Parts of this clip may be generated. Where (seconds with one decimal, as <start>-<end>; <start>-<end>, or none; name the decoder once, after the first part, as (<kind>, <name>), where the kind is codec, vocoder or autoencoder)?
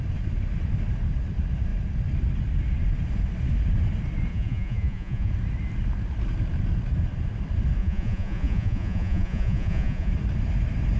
4.3-5.3 (vocoder, Vocos); 7.8-10.1